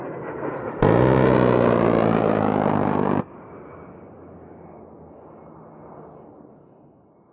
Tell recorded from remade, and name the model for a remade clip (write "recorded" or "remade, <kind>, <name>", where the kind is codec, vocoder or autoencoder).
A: recorded